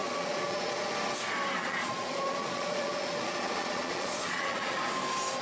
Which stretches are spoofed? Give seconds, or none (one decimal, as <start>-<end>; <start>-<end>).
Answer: 0.0-0.9; 1.6-4.8